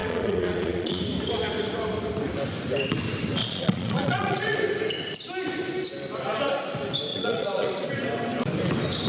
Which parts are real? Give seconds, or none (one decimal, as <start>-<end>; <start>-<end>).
1.0-3.4; 4.6-7.1; 7.9-9.1

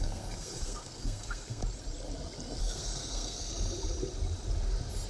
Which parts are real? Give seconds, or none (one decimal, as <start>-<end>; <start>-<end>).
1.6-2.6; 3.5-5.1

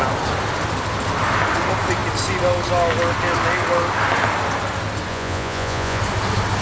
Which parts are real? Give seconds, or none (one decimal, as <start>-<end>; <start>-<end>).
0.0-5.1; 6.0-6.6

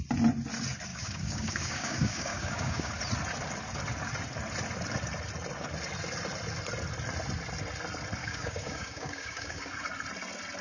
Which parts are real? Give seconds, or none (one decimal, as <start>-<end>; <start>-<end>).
0.0-0.9; 2.9-8.2; 9.7-10.6

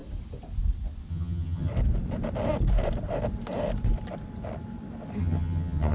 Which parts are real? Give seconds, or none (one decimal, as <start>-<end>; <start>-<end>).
0.0-1.1; 1.7-5.2

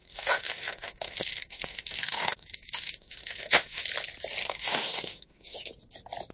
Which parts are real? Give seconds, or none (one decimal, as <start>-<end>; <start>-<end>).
3.8-4.4; 5.7-6.3